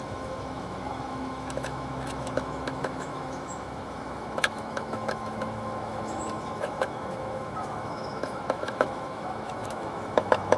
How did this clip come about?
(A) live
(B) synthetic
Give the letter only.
B